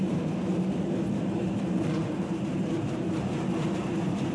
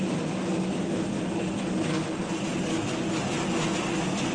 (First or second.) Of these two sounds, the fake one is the first